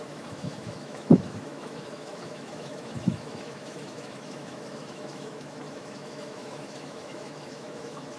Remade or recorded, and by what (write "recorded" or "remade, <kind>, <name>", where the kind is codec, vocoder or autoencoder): remade, autoencoder, DAC-VAE